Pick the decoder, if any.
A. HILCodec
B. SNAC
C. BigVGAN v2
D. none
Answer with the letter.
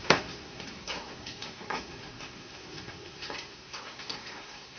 B